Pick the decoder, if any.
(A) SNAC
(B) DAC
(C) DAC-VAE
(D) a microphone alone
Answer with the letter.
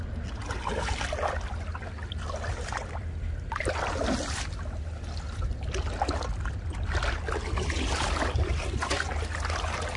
D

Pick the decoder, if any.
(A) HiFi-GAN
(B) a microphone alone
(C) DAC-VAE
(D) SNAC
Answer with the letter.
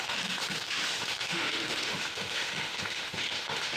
C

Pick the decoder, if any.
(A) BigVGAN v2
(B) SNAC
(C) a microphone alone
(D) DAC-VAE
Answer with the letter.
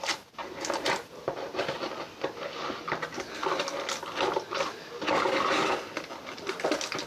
C